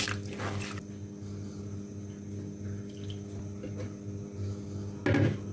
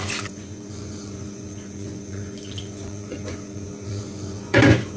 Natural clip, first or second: first